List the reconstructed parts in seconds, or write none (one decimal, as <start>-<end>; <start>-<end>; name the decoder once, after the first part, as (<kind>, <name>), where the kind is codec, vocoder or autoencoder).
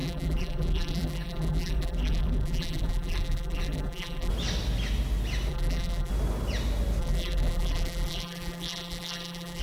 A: 0.0-4.3 (vocoder, BigVGAN v2); 5.5-6.1; 7.0-9.6